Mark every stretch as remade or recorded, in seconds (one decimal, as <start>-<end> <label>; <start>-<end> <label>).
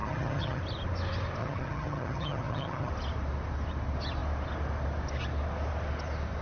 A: 0.0-0.6 remade; 0.6-1.4 recorded; 1.4-2.9 remade; 2.9-6.4 recorded